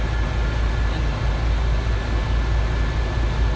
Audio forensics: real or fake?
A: real